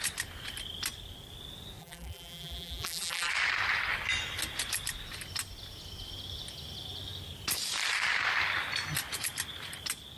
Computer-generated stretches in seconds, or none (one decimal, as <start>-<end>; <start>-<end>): 1.8-3.3